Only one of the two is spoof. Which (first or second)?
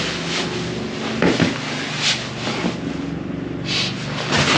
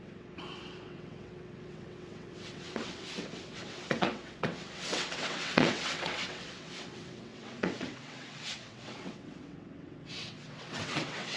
second